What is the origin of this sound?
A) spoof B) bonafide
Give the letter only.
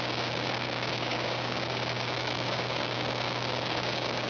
A